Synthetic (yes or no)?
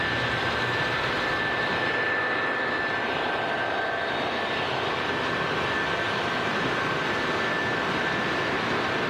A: no